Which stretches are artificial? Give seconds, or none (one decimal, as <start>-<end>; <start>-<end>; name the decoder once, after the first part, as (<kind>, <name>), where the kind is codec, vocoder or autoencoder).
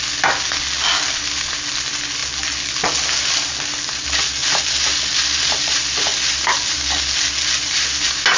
none